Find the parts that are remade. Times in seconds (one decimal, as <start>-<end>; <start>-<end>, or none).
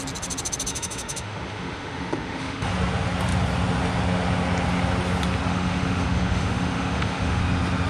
0.7-2.7; 5.5-7.4